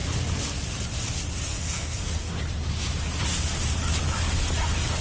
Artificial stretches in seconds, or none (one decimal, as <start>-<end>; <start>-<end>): 1.5-2.4